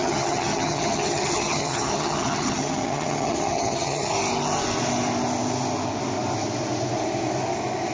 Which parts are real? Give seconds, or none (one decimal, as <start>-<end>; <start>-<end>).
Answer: 4.1-7.9